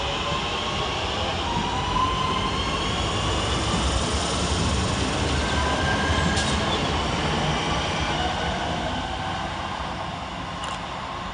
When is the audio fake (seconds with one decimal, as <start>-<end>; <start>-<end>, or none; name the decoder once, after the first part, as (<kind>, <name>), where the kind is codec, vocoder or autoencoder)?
none